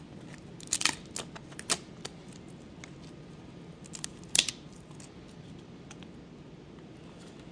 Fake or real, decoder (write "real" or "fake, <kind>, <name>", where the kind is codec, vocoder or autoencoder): real